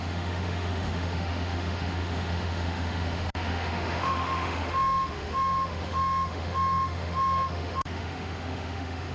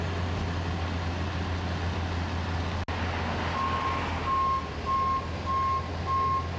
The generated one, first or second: first